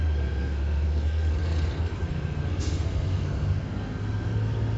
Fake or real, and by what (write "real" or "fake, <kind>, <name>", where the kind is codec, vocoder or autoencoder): fake, codec, SNAC